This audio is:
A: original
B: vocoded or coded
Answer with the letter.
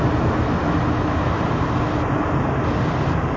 A